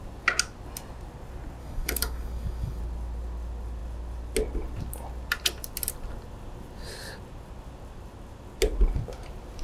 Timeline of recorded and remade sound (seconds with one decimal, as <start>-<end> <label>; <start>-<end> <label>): 0.0-1.6 recorded; 1.6-2.8 remade; 2.8-9.6 recorded